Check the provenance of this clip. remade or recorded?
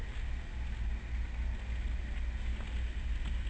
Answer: recorded